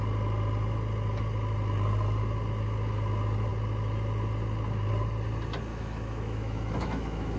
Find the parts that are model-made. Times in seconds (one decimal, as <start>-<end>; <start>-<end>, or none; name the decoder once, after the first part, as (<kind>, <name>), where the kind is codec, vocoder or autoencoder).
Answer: 5.7-7.4 (autoencoder, DAC-VAE)